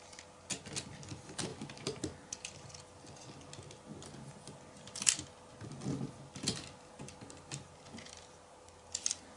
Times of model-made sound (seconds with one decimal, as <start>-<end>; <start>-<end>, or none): none